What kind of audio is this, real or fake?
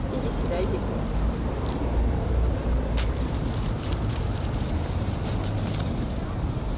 fake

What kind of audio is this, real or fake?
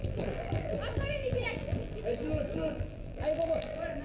fake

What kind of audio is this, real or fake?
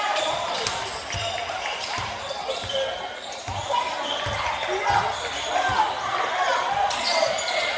real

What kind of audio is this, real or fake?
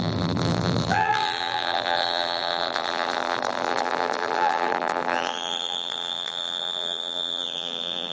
fake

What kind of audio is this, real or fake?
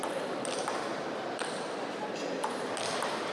fake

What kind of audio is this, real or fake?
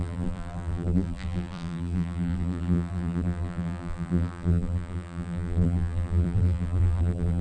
fake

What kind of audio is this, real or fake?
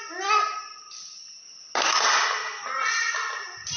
real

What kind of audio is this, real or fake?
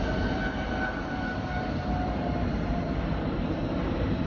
fake